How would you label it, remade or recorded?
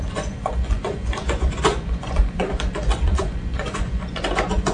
remade